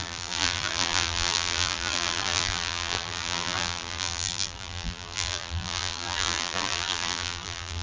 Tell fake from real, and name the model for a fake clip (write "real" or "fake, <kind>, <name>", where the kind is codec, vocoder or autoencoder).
fake, vocoder, BigVGAN v2